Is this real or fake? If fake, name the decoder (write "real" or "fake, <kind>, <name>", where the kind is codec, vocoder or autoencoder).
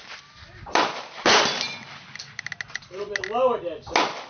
real